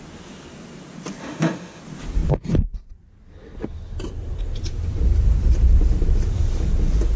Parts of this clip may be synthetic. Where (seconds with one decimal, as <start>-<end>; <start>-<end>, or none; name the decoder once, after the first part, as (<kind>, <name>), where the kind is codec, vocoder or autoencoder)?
1.2-1.8 (autoencoder, DAC-VAE)